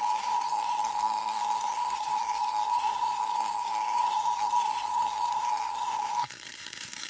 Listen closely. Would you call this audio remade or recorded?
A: remade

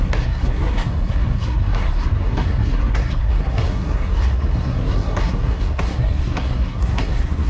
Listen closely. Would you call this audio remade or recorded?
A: remade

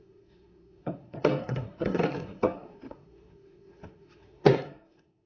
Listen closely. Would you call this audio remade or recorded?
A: remade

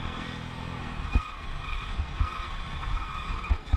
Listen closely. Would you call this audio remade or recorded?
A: remade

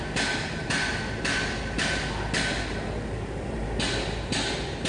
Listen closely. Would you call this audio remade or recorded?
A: recorded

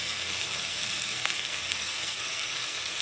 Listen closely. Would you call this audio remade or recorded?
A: remade